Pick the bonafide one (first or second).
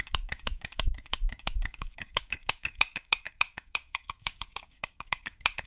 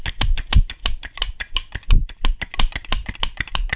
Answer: second